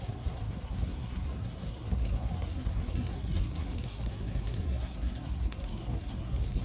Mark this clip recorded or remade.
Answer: remade